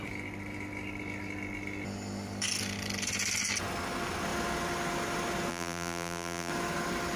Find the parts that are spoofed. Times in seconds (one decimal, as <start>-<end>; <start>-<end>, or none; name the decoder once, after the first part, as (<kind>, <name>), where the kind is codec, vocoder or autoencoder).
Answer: 5.5-6.5 (vocoder, BigVGAN v2)